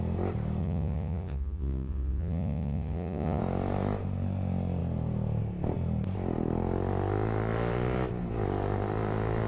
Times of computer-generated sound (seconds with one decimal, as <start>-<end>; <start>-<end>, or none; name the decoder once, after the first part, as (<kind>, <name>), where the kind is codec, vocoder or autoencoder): 0.6-3.4 (vocoder, Vocos)